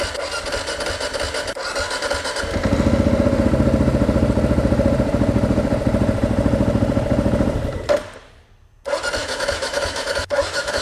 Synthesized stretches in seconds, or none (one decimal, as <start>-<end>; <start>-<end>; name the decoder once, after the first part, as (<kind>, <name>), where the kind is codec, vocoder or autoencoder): 9.2-10.8 (autoencoder, DAC-VAE)